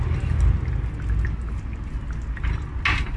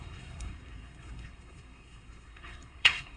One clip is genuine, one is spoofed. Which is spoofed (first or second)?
second